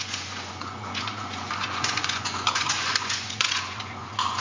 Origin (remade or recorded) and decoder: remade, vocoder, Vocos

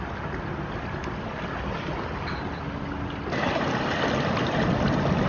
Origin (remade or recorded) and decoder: recorded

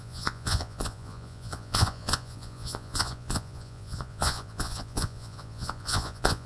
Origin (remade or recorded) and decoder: remade, vocoder, Vocos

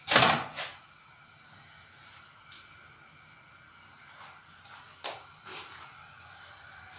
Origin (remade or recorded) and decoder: recorded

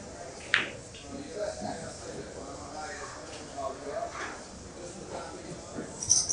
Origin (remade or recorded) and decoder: recorded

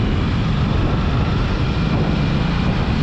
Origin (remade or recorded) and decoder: recorded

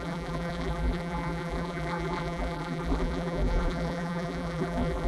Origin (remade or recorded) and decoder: remade, vocoder, BigVGAN v2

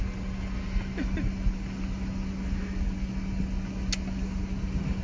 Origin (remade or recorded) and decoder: recorded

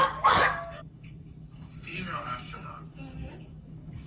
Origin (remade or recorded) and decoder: remade, codec, DAC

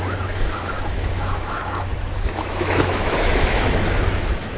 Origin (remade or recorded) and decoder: remade, autoencoder, DAC-VAE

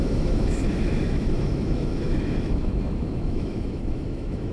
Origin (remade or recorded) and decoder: remade, autoencoder, DAC-VAE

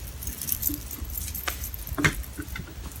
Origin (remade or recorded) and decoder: recorded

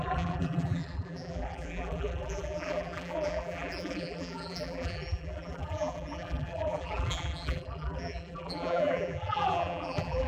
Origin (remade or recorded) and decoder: remade, vocoder, BigVGAN v2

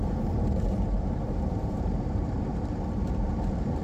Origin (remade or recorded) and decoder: remade, vocoder, BigVGAN v2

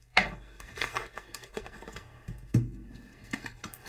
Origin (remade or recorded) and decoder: remade, codec, SNAC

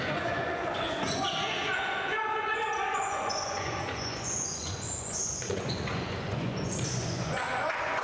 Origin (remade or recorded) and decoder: remade, vocoder, Vocos